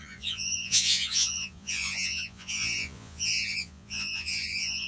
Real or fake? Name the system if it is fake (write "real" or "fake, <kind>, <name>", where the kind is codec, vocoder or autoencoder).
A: fake, vocoder, Vocos